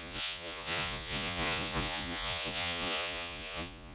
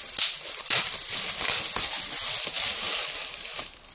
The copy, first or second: first